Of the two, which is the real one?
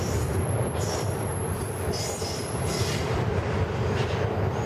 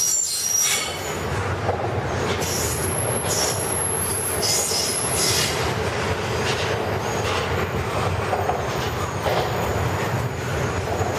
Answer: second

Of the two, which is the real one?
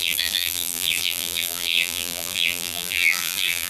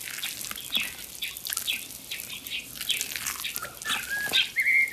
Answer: second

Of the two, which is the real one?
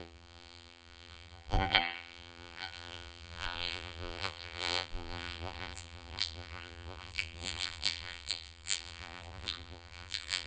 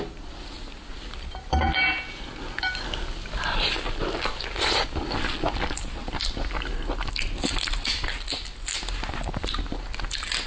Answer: second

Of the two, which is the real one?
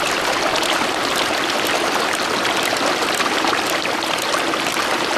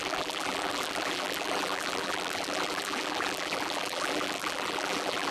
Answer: first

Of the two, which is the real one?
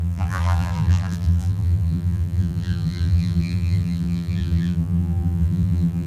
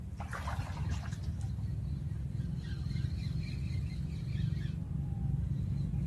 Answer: second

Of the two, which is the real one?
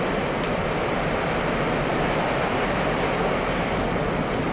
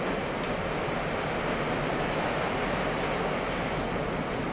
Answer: second